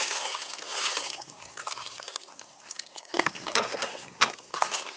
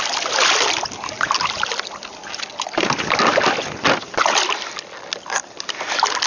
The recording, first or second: second